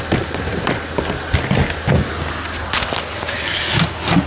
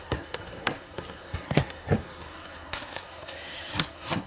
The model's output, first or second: second